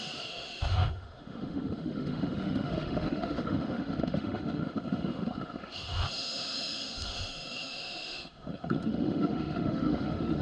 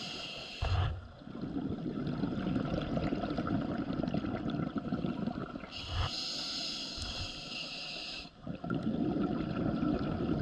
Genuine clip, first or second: second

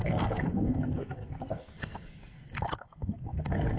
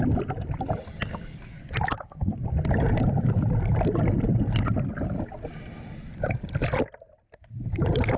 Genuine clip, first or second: second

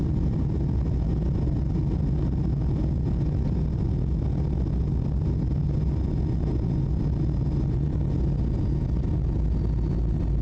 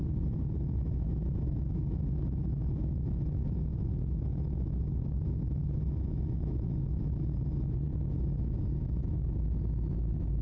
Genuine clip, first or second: first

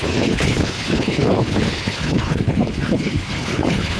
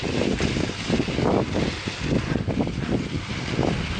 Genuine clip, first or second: second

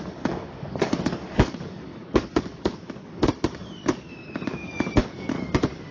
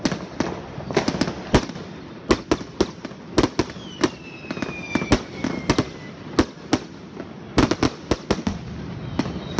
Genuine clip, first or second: second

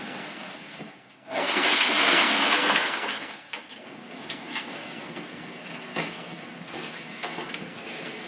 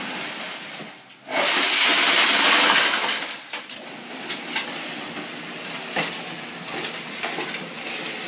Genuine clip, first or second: second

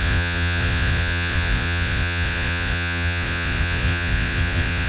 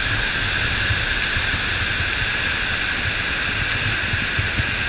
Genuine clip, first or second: second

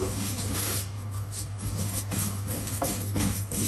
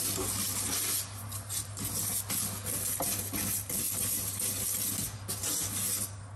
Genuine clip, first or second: second